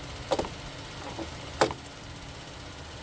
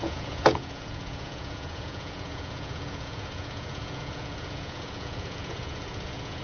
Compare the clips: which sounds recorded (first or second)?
first